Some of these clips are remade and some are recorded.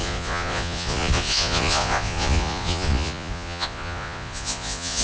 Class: remade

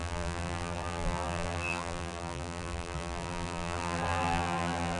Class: remade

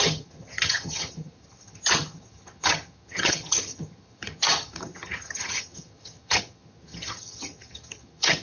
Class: remade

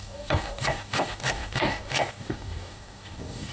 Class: remade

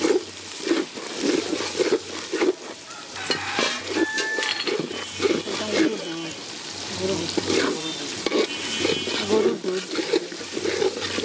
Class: recorded